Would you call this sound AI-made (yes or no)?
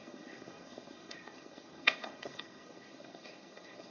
yes